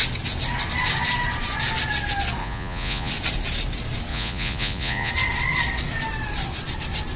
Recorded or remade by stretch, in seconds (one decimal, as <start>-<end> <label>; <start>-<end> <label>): 0.0-2.4 recorded; 2.4-3.1 remade; 3.1-4.1 recorded; 4.1-5.1 remade; 5.1-7.2 recorded